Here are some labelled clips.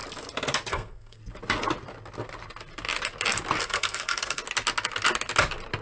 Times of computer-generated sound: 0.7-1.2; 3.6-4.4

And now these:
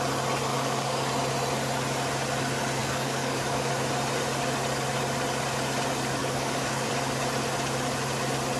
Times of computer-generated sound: 0.5-1.1; 2.8-3.7; 6.2-6.9